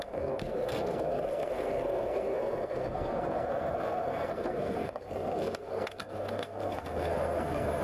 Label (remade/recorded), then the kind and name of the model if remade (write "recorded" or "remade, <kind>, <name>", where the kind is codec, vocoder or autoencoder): remade, codec, SNAC